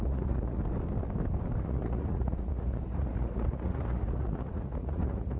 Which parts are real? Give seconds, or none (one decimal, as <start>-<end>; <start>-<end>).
0.6-1.6